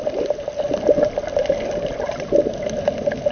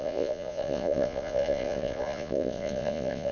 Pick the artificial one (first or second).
second